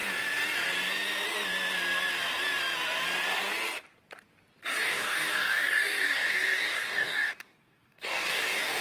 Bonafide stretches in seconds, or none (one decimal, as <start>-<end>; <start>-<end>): 0.0-4.8